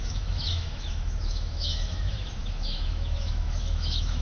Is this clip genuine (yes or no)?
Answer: no